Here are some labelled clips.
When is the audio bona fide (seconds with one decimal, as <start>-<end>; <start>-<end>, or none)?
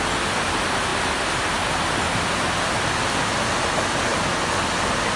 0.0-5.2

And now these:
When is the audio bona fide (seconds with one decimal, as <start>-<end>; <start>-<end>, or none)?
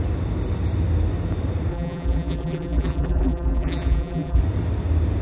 0.0-1.7; 4.4-5.2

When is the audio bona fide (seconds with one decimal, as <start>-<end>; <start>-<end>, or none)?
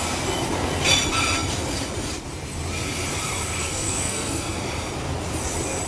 0.0-3.6; 4.6-5.9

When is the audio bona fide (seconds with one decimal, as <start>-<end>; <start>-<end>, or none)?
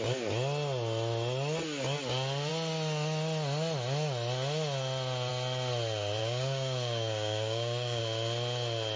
0.0-6.2; 8.0-9.0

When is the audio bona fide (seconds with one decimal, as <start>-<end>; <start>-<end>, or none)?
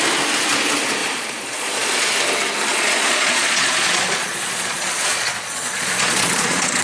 0.0-1.0; 2.1-2.7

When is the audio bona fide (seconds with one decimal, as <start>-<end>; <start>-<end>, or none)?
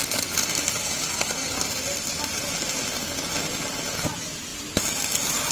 0.0-5.5